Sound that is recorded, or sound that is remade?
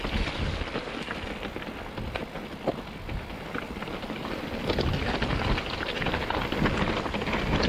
recorded